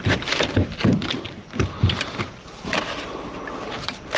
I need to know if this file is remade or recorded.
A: remade